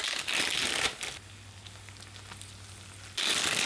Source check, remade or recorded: recorded